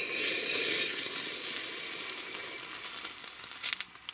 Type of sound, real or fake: real